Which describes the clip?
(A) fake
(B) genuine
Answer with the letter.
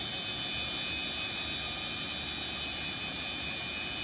B